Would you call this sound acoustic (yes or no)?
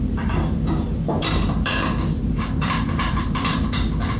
no